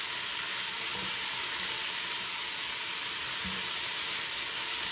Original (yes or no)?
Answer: yes